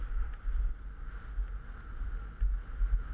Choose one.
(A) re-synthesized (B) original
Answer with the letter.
B